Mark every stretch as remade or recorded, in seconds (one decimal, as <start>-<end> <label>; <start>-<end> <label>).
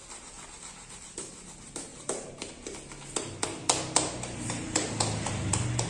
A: 0.0-1.9 recorded; 1.9-2.5 remade; 2.5-5.9 recorded